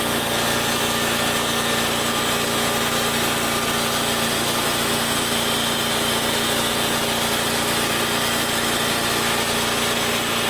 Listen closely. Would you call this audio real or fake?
real